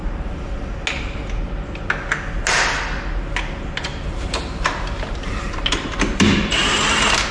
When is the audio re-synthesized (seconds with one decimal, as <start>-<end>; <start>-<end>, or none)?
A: 0.0-0.7; 3.9-7.3